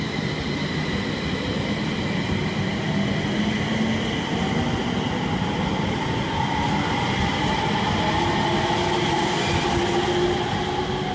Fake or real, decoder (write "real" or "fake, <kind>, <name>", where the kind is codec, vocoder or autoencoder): real